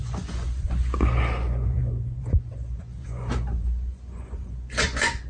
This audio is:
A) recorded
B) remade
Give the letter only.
B